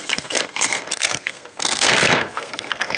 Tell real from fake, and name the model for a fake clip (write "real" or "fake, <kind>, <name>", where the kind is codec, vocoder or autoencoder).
fake, codec, SNAC